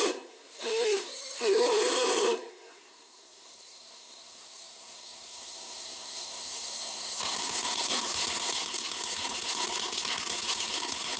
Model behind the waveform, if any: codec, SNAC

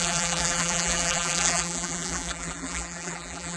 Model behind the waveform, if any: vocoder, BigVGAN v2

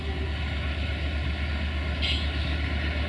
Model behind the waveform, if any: none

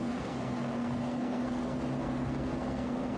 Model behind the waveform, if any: codec, SNAC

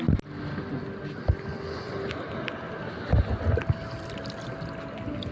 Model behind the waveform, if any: none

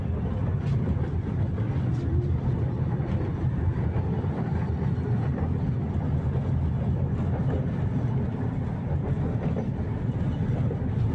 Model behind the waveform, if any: none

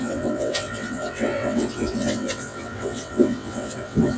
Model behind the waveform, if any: vocoder, WaveNeXt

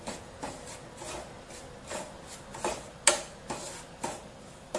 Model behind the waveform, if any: none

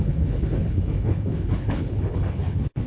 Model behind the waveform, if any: codec, HILCodec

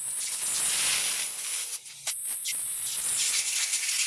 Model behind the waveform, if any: none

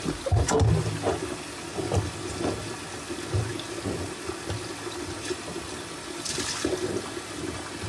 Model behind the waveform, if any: none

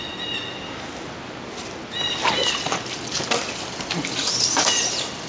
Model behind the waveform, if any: none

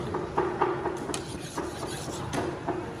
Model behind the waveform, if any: none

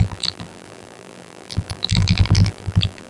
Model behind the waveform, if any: vocoder, BigVGAN v2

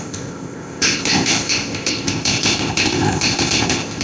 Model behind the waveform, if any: codec, ZipCodec